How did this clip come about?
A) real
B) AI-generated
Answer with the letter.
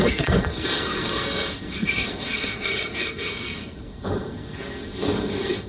B